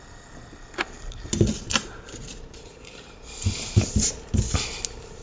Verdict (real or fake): real